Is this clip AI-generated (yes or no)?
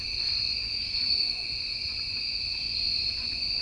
yes